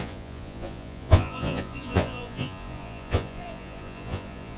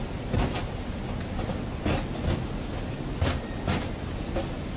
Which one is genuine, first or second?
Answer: second